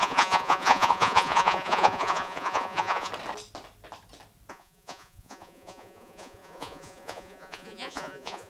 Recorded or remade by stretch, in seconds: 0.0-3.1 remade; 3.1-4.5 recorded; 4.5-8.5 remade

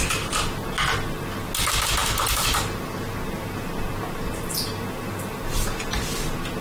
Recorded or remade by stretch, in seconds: 0.0-6.6 recorded

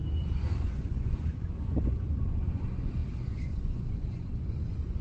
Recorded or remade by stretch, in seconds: 0.0-5.0 remade